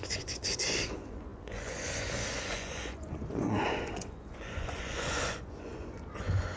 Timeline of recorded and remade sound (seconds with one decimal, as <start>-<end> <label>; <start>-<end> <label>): 0.0-6.6 remade